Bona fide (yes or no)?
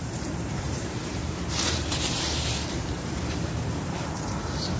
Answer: no